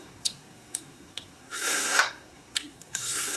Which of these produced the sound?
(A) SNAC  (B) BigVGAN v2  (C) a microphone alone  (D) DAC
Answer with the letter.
A